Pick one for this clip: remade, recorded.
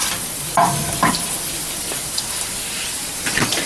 remade